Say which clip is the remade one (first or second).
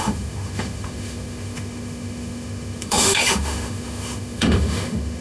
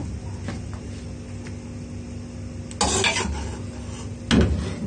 first